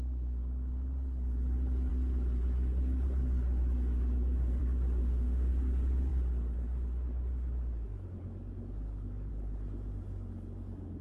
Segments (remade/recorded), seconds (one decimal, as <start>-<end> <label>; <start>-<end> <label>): 0.0-5.0 recorded; 5.0-5.5 remade; 5.5-11.0 recorded